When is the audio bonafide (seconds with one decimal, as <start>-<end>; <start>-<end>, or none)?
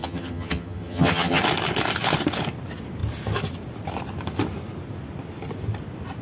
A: 1.4-6.2